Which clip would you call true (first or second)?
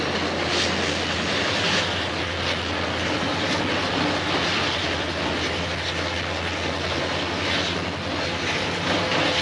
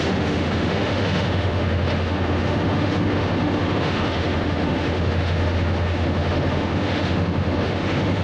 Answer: first